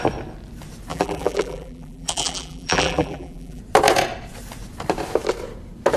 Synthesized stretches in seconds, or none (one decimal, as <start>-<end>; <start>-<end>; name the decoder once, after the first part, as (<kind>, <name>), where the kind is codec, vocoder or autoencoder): 0.9-3.6 (vocoder, BigVGAN v2)